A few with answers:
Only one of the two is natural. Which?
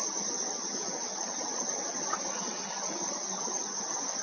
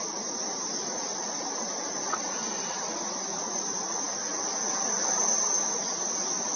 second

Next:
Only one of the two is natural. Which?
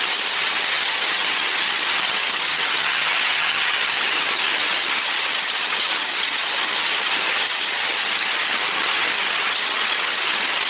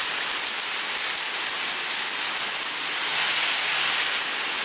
second